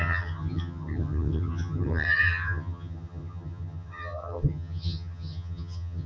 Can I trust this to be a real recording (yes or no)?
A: no